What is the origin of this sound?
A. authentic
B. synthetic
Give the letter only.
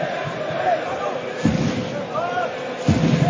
A